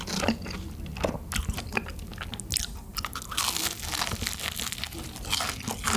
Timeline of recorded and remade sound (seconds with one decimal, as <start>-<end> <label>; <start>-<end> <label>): 0.0-6.0 recorded